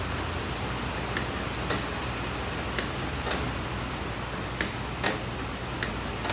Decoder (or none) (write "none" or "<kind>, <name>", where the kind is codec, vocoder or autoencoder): none